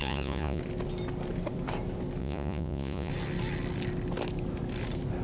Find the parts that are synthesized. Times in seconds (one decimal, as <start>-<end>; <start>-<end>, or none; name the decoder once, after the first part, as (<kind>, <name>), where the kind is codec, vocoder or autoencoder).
0.0-0.6 (vocoder, Vocos); 2.2-3.1

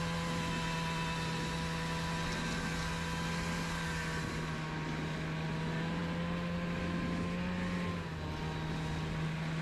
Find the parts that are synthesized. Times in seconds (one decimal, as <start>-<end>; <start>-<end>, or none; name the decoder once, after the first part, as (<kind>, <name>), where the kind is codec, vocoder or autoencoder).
none

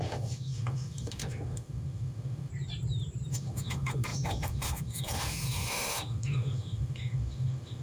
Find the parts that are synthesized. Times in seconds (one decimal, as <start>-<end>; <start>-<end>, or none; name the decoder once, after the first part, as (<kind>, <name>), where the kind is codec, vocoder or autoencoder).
0.0-2.5 (autoencoder, DAC-VAE); 3.3-7.8

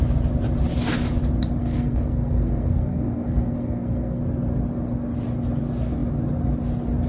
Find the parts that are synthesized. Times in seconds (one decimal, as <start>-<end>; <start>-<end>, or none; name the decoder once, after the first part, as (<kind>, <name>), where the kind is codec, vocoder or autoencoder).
1.6-4.2 (codec, SNAC)

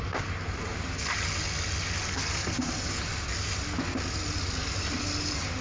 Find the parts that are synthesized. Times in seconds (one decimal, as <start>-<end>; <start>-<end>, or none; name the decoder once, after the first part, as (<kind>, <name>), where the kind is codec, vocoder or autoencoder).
2.1-2.7 (codec, SNAC)

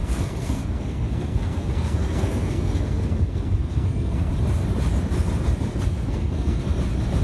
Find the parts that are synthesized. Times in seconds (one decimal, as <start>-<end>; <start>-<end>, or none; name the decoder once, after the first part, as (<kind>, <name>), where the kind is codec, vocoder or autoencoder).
0.0-4.3 (codec, SNAC); 5.7-6.6